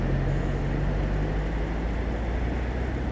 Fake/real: real